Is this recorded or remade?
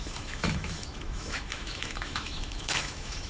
remade